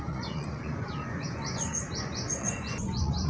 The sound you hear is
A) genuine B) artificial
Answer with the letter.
B